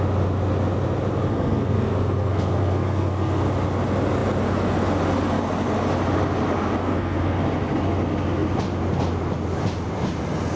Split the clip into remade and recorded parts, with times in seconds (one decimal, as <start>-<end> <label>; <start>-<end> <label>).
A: 0.0-1.3 recorded; 1.3-3.4 remade; 3.4-6.8 recorded; 6.8-7.4 remade; 7.4-10.6 recorded